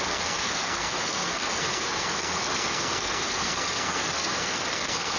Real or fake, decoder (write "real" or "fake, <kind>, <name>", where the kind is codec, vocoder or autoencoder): fake, codec, SNAC